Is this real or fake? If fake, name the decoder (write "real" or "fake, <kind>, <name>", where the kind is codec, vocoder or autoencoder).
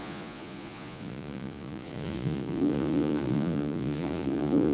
fake, vocoder, Vocos